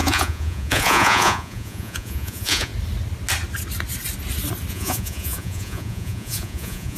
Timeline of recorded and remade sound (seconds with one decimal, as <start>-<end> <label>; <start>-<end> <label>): 0.0-2.7 remade; 2.7-4.7 recorded; 4.7-7.0 remade